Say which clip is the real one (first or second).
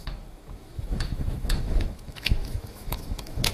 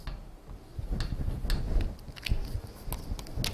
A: second